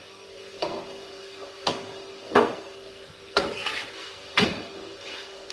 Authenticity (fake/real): fake